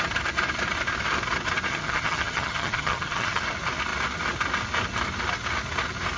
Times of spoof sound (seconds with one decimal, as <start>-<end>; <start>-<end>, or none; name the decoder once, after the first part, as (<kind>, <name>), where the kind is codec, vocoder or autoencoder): 1.7-3.4 (vocoder, HiFi-GAN)